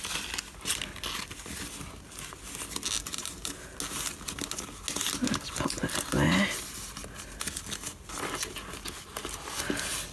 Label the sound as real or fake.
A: real